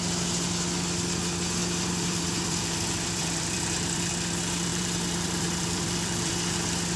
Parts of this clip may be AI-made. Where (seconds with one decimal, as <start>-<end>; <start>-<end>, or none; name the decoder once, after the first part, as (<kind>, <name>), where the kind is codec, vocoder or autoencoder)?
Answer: 1.6-4.1 (vocoder, BigVGAN v2); 4.7-6.3